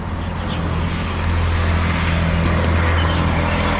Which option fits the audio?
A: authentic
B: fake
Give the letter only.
A